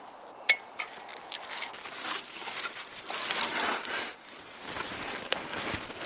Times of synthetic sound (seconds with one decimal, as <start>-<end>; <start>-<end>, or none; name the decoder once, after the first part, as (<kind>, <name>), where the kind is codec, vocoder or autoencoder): none